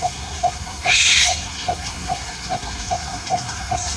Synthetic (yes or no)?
yes